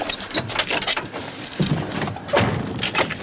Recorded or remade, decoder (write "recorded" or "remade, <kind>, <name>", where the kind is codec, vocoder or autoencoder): recorded